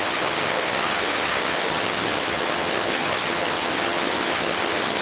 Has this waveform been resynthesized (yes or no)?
yes